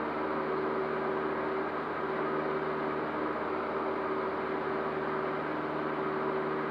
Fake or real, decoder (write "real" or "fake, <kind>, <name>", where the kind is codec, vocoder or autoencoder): real